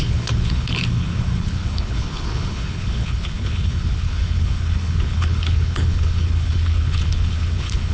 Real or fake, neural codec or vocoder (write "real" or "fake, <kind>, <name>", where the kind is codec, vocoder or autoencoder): fake, codec, HILCodec